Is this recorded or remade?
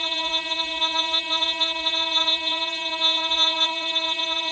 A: remade